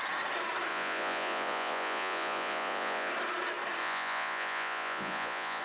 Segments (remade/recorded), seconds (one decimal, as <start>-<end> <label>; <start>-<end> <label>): 0.0-0.7 recorded; 0.7-3.1 remade; 3.1-3.8 recorded; 3.8-5.6 remade